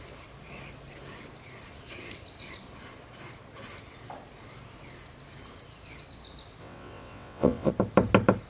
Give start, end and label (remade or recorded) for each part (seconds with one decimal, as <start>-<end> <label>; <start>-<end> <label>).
0.0-6.6 recorded; 6.6-7.7 remade; 7.7-8.5 recorded